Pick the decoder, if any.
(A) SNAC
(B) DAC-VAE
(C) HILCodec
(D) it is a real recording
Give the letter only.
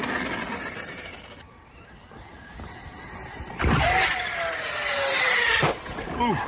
D